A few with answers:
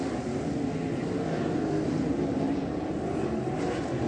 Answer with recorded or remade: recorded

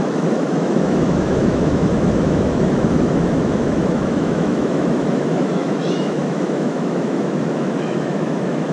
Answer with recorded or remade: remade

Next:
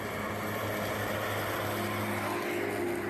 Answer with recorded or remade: recorded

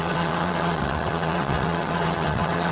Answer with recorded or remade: remade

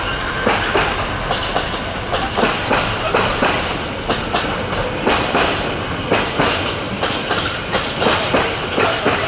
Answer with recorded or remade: recorded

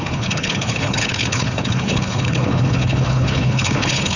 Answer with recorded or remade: remade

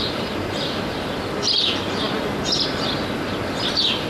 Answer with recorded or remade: recorded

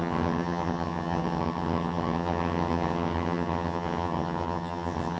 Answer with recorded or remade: remade